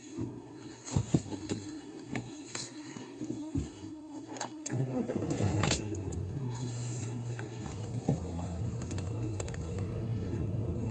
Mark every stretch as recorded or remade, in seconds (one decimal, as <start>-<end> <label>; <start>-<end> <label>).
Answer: 0.0-10.9 remade